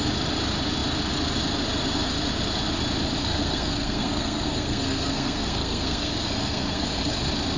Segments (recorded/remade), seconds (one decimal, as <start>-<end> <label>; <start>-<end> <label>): 0.0-3.2 recorded; 3.2-7.1 remade; 7.1-7.6 recorded